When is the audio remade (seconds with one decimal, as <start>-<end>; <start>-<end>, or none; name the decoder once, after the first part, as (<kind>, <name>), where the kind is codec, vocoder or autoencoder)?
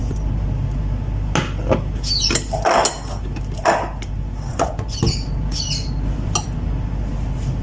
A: 4.5-5.0 (vocoder, Vocos)